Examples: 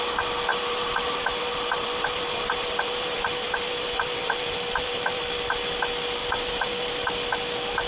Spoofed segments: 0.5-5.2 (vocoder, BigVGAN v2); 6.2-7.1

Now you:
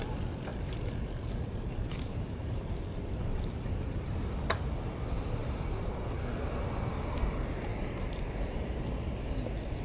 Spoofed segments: 0.5-3.5 (vocoder, BigVGAN v2); 5.4-5.9; 7.7-8.5

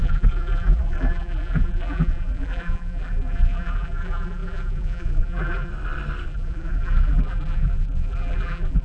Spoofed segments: 0.0-5.7 (vocoder, BigVGAN v2); 6.3-8.8

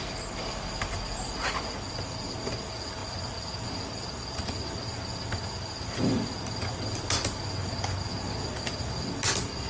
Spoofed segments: none

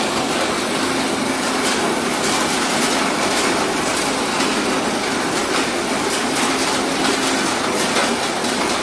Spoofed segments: 2.1-3.0 (vocoder, BigVGAN v2)